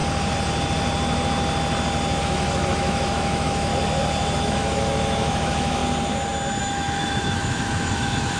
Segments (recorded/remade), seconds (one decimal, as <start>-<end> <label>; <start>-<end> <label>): 0.0-2.2 recorded; 2.2-3.7 remade; 3.7-4.4 recorded; 4.4-5.8 remade; 5.8-6.6 recorded; 6.6-8.4 remade